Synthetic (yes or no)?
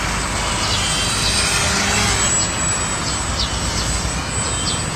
no